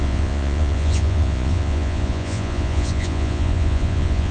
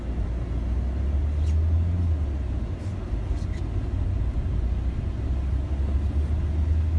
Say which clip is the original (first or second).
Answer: second